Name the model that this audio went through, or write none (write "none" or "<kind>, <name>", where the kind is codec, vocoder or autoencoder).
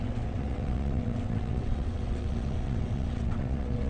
vocoder, WaveNeXt